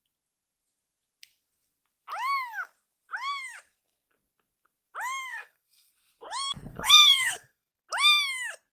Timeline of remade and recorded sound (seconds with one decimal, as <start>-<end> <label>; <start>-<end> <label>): 0.0-5.3 recorded; 5.3-5.9 remade; 5.9-6.7 recorded; 6.7-7.7 remade; 7.7-8.8 recorded